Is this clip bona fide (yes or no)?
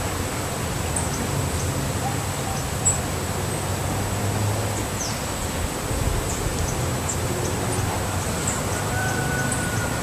yes